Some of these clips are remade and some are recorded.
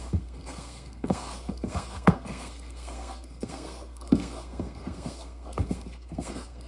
remade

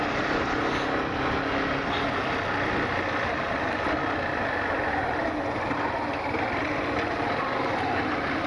recorded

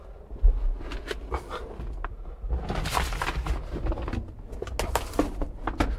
recorded